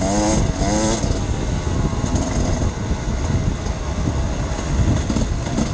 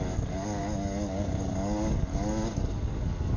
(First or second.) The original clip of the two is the first